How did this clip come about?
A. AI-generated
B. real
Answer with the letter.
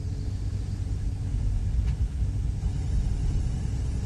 B